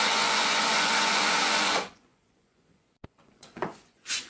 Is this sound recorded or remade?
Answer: remade